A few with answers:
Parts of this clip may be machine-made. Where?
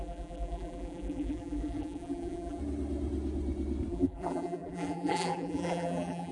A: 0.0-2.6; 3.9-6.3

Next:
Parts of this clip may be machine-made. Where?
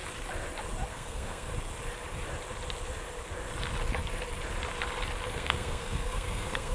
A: 0.9-1.5; 5.3-6.7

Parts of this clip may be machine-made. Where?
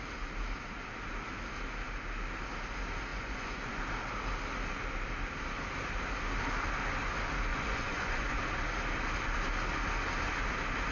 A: 3.1-3.8; 7.5-8.4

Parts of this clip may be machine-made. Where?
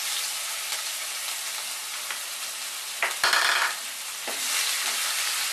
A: none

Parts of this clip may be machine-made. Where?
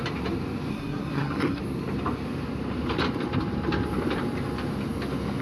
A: 0.7-1.6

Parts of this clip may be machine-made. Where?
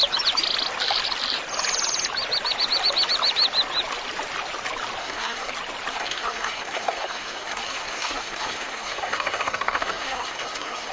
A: 5.0-5.5; 5.9-10.9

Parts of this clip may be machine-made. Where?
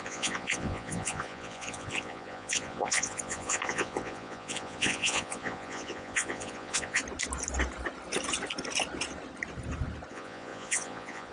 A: 0.0-7.0; 10.1-11.3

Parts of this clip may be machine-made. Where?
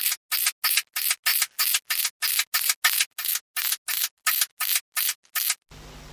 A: none